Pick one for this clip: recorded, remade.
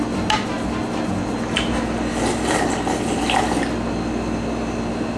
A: recorded